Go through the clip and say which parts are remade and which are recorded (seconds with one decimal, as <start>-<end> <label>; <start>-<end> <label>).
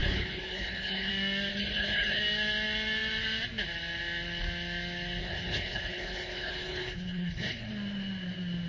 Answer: 0.0-1.1 remade; 1.1-1.5 recorded; 1.5-2.2 remade; 2.2-5.2 recorded; 5.2-7.7 remade; 7.7-8.7 recorded